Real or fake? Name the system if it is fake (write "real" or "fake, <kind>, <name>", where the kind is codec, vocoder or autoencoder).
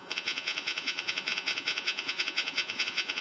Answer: fake, vocoder, Vocos